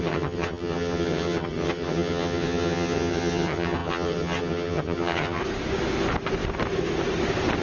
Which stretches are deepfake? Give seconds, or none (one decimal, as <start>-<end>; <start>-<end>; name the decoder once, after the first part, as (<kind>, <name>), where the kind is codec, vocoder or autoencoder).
0.0-5.4 (vocoder, HiFi-GAN)